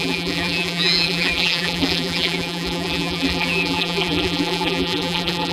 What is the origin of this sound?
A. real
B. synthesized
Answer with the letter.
B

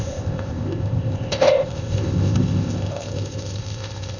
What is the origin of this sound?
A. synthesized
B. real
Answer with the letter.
A